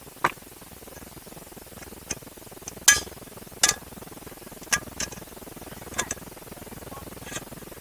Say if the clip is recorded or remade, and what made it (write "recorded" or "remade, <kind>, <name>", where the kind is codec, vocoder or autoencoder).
recorded